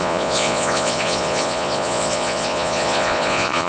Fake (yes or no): yes